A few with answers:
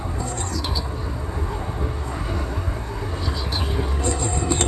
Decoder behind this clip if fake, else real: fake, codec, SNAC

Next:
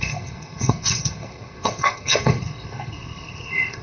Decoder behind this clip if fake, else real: fake, codec, SNAC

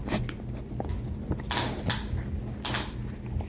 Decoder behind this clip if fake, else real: real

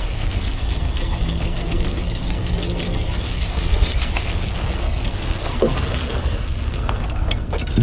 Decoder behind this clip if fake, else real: fake, codec, SNAC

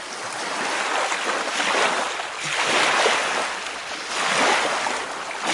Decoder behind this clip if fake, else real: real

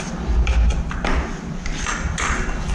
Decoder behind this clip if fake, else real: real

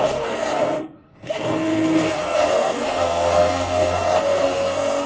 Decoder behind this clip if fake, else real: fake, codec, SNAC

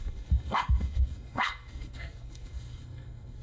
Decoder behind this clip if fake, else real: fake, codec, SNAC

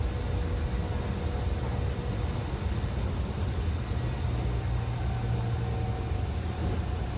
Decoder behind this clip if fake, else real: real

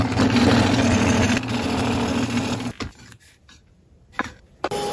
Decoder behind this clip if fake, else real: real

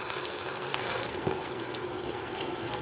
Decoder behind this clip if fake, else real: fake, codec, SNAC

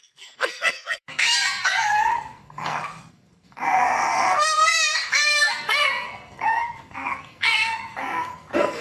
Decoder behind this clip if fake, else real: fake, codec, SNAC